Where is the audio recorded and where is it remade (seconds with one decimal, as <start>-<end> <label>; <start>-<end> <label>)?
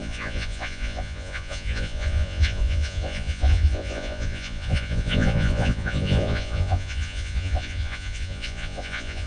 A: 0.0-9.3 remade